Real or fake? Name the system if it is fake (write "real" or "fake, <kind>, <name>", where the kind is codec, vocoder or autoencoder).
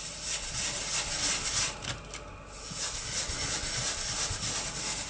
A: real